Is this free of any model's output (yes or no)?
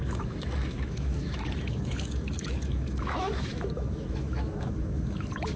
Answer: no